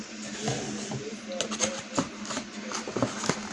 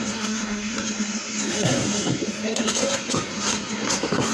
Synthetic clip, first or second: second